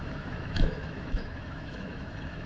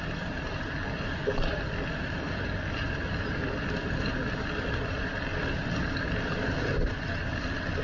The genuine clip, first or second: second